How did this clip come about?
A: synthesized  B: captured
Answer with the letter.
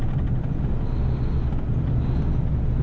B